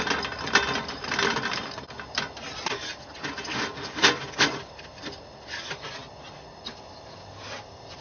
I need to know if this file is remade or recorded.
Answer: recorded